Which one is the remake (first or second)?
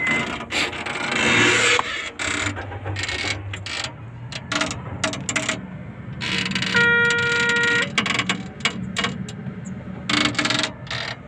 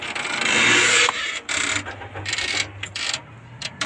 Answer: second